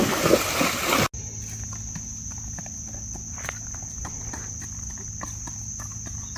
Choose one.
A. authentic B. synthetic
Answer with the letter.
A